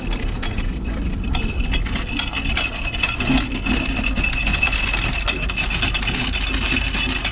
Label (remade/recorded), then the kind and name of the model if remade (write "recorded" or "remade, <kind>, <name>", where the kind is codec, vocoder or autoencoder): recorded